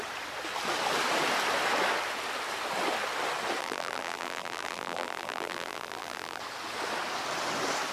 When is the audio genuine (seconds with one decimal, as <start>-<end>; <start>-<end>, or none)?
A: 0.0-3.6; 6.4-7.9